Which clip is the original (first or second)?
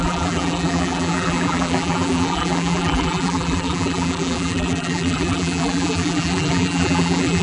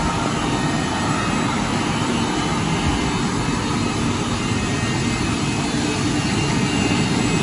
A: second